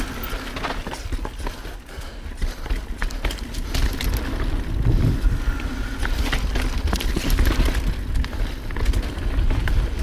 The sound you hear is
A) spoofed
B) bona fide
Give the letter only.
B